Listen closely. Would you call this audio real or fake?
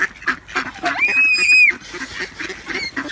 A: real